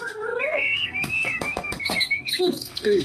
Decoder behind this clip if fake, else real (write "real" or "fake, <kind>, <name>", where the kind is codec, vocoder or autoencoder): fake, codec, SNAC